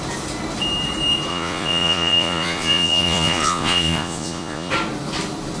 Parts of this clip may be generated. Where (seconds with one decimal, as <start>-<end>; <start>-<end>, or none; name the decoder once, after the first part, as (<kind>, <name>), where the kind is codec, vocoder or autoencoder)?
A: 1.3-4.7 (vocoder, Vocos)